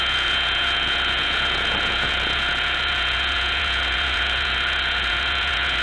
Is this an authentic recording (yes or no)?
no